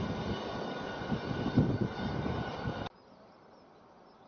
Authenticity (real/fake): real